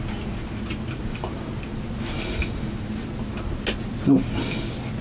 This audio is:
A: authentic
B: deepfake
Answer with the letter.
A